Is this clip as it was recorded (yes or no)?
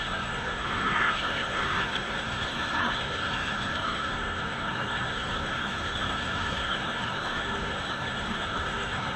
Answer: no